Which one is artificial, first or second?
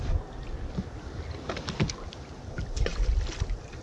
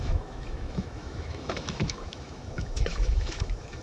second